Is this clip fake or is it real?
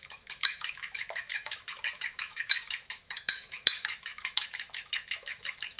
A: fake